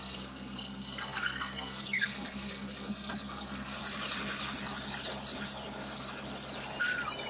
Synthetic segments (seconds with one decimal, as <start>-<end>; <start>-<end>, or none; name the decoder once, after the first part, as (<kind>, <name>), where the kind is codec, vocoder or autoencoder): 0.0-3.8 (codec, SNAC)